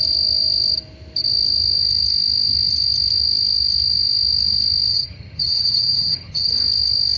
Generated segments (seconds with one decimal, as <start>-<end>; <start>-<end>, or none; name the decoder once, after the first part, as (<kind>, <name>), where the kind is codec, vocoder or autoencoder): 4.9-6.5 (vocoder, HiFi-GAN)

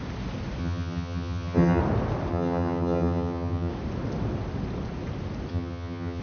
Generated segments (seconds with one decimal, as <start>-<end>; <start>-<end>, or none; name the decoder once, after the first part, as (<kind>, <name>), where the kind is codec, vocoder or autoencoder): 0.6-1.8 (vocoder, HiFi-GAN); 2.3-3.7; 5.5-6.2

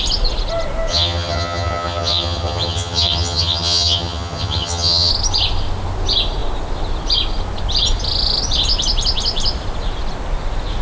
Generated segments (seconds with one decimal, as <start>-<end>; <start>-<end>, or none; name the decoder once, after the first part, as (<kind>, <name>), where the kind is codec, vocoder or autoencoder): 0.9-5.1 (vocoder, HiFi-GAN)